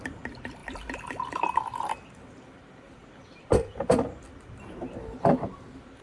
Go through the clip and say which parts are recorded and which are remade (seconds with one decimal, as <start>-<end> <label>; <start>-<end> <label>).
0.0-6.0 remade